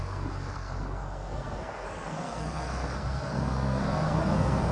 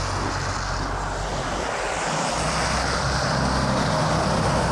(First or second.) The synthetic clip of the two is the first